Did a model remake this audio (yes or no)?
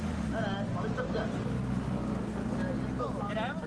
no